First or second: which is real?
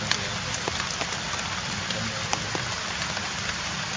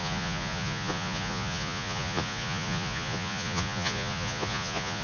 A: first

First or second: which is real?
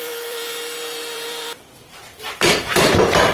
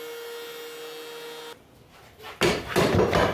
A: second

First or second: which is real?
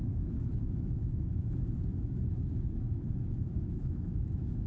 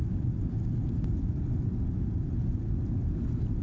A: second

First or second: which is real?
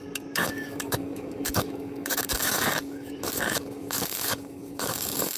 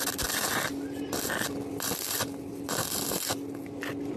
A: second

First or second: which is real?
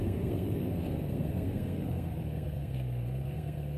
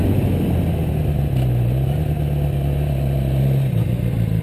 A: second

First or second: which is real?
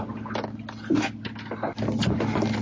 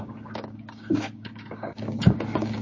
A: first